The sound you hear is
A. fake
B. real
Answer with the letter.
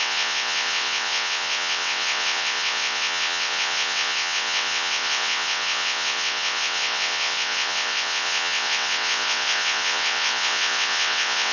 A